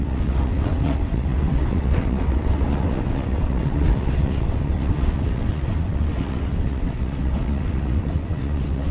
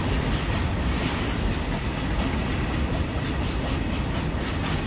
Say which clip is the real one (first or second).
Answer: second